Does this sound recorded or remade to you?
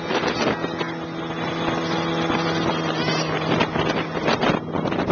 recorded